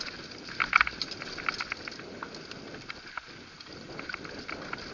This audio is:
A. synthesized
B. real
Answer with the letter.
B